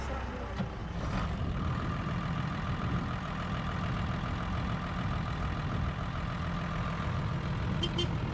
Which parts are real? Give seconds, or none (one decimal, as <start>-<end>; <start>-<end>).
0.0-0.8; 3.9-8.3